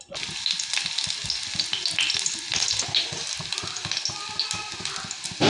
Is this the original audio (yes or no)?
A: yes